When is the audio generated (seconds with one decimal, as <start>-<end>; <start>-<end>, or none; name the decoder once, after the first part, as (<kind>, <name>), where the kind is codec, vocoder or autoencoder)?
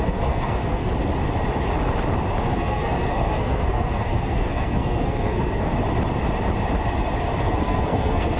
0.0-0.8 (codec, SNAC); 2.4-5.7; 7.4-8.4